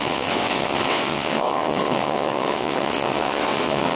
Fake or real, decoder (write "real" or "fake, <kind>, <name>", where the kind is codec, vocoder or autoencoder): fake, vocoder, WaveNeXt